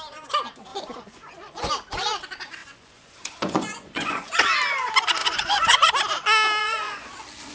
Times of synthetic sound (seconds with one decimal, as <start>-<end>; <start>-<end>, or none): 0.7-1.7; 2.6-4.3; 5.2-5.9; 6.6-7.1